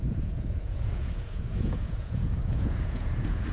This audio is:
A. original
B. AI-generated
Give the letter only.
B